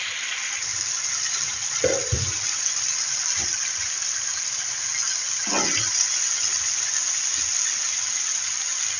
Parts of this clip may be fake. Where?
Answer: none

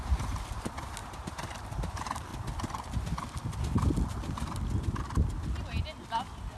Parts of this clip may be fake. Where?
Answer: 0.0-2.3 (vocoder, BigVGAN v2)

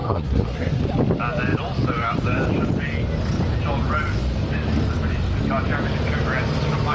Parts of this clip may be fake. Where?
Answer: 0.0-0.8 (codec, SNAC)

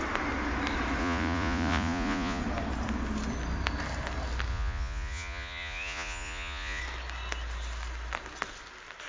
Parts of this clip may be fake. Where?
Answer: 1.0-2.4 (vocoder, Vocos); 4.5-6.8

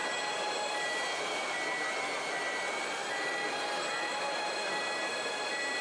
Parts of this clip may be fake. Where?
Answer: none

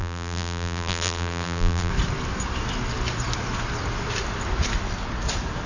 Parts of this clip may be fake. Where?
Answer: 0.0-1.9 (vocoder, BigVGAN v2)

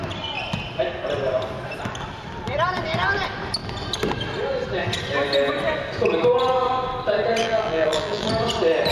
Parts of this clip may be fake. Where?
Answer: 7.4-8.3 (vocoder, BigVGAN v2)